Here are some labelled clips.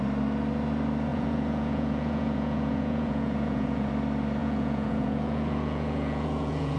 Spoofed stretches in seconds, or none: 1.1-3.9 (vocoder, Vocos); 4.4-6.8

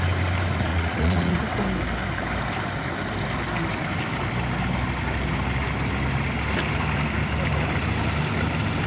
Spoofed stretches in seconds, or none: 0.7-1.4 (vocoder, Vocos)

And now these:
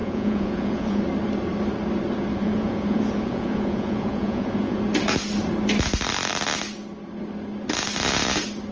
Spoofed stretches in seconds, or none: 0.0-1.0 (vocoder, Vocos); 2.3-4.8

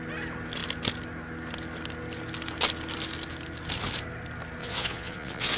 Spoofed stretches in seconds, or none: 4.6-5.6 (vocoder, Vocos)

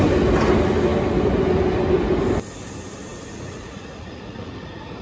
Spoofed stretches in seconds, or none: 3.1-5.0 (vocoder, Vocos)

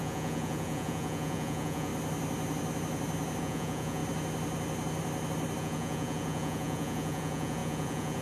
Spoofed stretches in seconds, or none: 0.0-1.9 (vocoder, Vocos); 3.4-4.0; 5.6-8.2

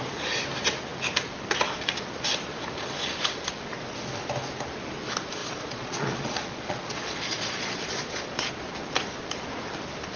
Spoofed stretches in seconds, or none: 5.4-8.5 (vocoder, Vocos)